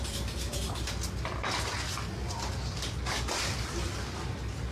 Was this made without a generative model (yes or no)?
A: yes